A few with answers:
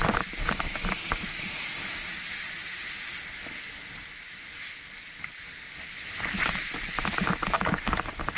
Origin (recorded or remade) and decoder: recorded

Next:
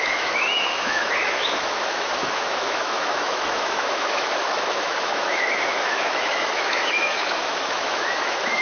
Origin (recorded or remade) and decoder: remade, autoencoder, DAC-VAE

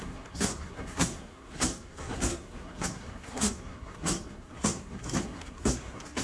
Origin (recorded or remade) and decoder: remade, codec, SNAC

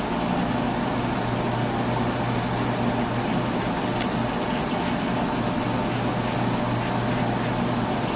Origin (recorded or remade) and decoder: recorded